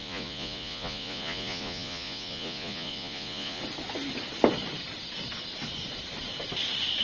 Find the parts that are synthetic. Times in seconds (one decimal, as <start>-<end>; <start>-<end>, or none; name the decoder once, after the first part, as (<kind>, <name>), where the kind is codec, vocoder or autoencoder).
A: 0.0-3.6 (vocoder, Vocos)